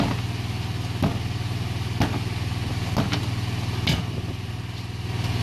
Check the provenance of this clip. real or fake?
real